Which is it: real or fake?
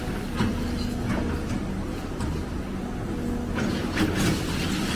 real